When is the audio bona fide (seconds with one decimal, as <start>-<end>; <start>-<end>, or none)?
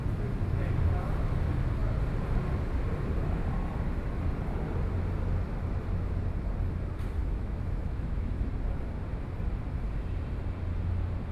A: 0.0-7.2; 8.5-11.3